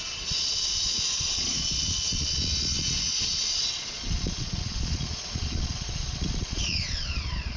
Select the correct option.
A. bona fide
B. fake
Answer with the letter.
B